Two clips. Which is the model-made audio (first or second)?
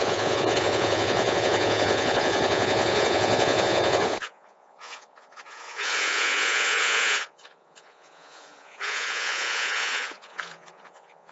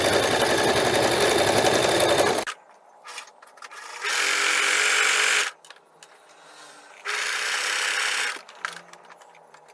first